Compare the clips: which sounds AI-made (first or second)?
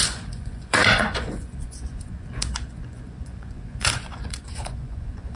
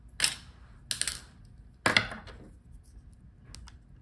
first